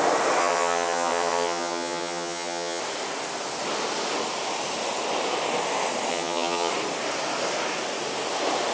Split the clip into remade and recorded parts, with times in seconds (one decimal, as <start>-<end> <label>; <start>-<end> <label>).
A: 0.0-0.4 recorded; 0.4-2.8 remade; 2.8-6.1 recorded; 6.1-6.7 remade; 6.7-8.7 recorded

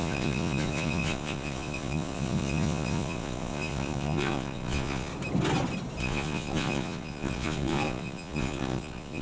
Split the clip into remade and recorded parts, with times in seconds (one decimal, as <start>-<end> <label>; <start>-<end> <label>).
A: 0.0-5.1 remade; 5.1-6.0 recorded; 6.0-9.2 remade